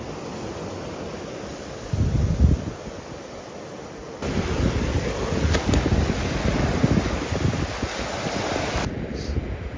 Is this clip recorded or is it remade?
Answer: recorded